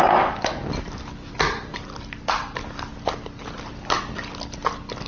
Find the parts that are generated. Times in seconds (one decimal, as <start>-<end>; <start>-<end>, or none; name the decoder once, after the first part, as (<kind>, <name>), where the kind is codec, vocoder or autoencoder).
none